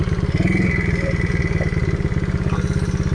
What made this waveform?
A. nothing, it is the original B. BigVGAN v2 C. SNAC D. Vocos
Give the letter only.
A